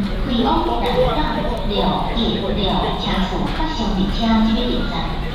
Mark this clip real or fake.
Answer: fake